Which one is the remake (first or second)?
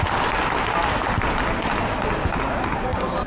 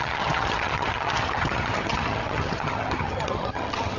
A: second